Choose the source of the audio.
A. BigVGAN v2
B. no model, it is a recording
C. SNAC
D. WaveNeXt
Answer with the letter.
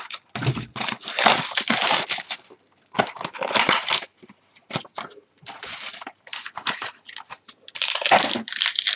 B